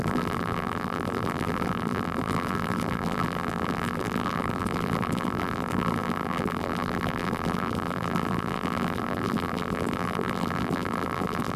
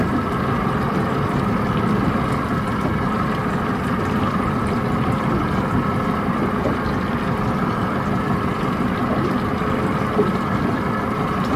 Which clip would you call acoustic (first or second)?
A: second